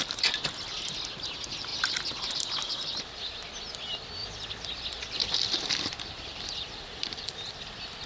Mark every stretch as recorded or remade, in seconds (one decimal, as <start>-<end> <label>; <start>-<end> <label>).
0.0-4.2 recorded; 4.2-7.5 remade; 7.5-8.1 recorded